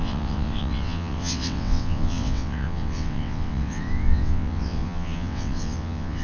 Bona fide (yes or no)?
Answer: no